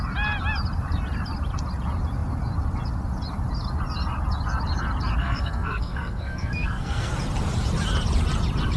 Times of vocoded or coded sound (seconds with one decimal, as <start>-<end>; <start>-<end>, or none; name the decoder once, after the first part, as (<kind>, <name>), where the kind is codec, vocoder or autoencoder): 5.2-7.1 (codec, SNAC)